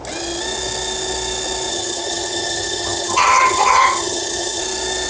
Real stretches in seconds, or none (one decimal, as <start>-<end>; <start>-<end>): 0.0-1.7; 4.6-5.1